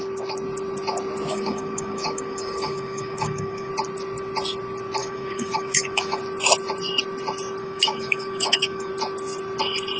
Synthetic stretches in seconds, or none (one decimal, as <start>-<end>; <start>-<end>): 1.3-3.7; 5.0-6.2; 7.6-8.9